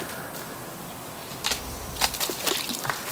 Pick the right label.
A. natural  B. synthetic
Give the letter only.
A